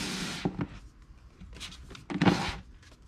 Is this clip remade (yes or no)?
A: no